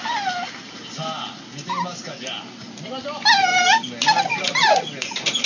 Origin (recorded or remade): recorded